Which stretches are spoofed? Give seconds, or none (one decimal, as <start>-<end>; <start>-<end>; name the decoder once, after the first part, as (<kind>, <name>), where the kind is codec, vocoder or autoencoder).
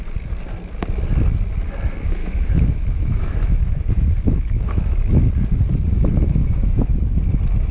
2.2-5.3 (autoencoder, DAC-VAE); 5.9-6.9